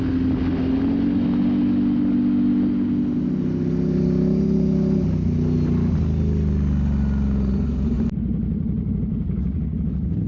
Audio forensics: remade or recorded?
recorded